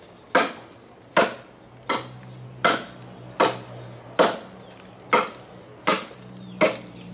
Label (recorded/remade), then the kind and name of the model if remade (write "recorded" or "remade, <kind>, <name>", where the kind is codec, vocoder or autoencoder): recorded